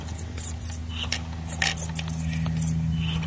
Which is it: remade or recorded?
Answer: recorded